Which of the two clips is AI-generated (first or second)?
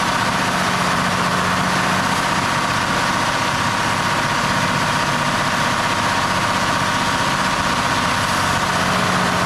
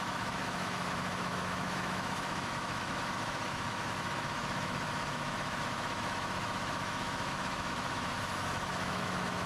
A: second